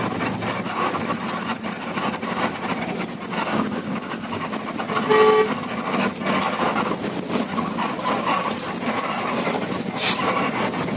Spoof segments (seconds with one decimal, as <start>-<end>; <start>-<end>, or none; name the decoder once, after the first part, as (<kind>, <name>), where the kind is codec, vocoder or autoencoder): 3.5-4.5 (codec, DAC)